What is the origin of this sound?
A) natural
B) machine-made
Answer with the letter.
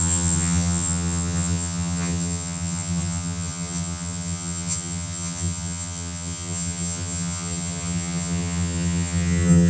B